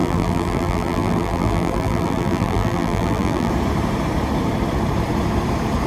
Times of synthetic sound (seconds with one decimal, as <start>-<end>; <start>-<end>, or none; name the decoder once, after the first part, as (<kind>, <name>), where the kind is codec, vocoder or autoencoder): 0.0-3.5 (vocoder, BigVGAN v2)